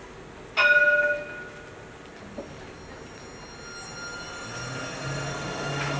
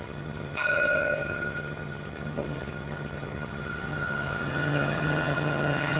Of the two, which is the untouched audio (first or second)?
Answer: first